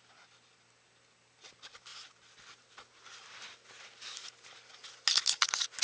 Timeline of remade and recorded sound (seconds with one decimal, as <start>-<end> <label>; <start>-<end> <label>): 0.0-5.8 recorded